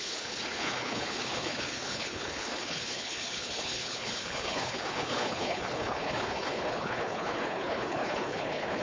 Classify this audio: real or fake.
fake